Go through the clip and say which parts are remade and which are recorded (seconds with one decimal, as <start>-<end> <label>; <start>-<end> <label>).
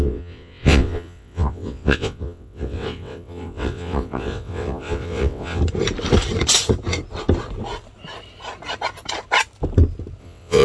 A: 0.0-5.6 remade; 5.6-10.2 recorded; 10.2-10.6 remade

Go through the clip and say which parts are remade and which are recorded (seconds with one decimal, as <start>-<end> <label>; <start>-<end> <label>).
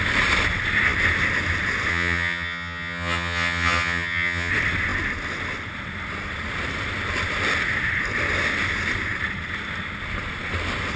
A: 0.0-1.9 recorded; 1.9-4.5 remade; 4.5-11.0 recorded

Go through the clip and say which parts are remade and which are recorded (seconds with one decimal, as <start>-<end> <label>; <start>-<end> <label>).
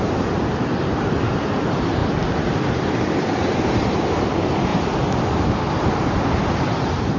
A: 0.0-2.0 remade; 2.0-3.0 recorded; 3.0-4.7 remade; 4.7-5.7 recorded; 5.7-7.2 remade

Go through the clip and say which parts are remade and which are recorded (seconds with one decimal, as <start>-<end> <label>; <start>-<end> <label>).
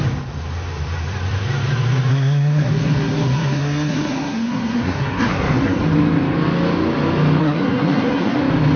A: 0.0-2.1 recorded; 2.1-5.8 remade; 5.8-7.4 recorded; 7.4-8.4 remade; 8.4-8.8 recorded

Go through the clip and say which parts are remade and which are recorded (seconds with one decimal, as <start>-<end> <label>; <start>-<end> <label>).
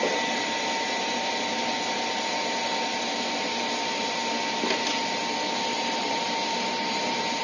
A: 0.0-1.3 remade; 1.3-5.7 recorded; 5.7-7.4 remade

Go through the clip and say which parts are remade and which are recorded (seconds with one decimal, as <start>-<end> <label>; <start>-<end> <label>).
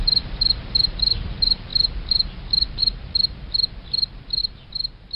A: 0.0-5.2 remade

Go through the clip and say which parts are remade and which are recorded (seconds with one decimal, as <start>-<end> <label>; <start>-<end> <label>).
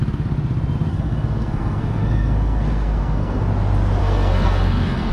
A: 0.0-0.9 recorded; 0.9-3.4 remade; 3.4-4.0 recorded; 4.0-5.1 remade